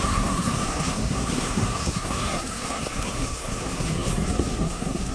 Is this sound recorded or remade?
remade